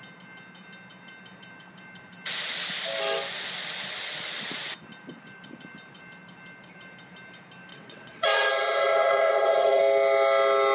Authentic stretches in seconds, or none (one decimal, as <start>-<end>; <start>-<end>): 0.0-7.7; 9.8-10.7